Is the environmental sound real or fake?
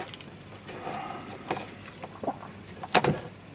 real